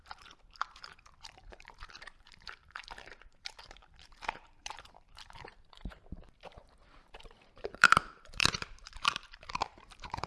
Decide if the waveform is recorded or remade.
remade